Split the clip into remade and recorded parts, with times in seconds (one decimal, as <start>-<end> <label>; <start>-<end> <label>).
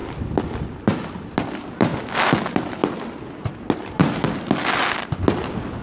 0.0-5.8 recorded